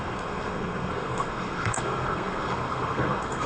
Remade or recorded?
remade